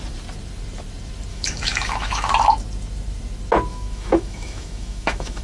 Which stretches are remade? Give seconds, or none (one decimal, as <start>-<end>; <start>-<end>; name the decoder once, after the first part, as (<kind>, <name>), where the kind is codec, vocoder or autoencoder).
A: 1.3-2.3 (autoencoder, DAC-VAE); 3.7-5.4